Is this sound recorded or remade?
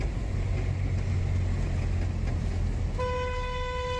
recorded